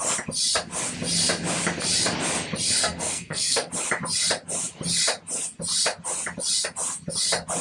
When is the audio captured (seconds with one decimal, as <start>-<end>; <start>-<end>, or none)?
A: 0.0-2.8; 3.7-7.6